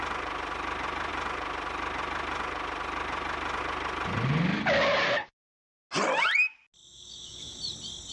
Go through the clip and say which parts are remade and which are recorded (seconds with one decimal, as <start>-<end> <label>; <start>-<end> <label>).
0.0-6.8 recorded; 6.8-7.6 remade; 7.6-8.1 recorded